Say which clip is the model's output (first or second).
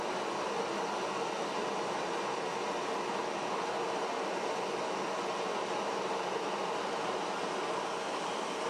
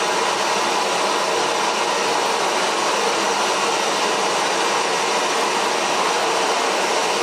second